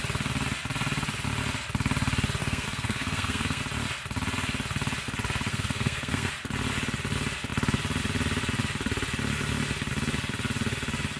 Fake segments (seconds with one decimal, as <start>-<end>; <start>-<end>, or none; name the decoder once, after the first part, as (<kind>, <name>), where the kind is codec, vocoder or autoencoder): 2.4-3.6 (codec, SNAC); 5.5-6.3